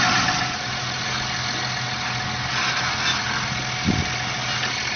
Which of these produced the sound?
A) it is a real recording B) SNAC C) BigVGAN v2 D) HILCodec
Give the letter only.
A